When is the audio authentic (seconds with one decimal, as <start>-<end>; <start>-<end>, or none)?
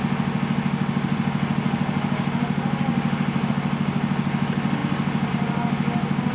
0.0-2.9; 3.5-6.3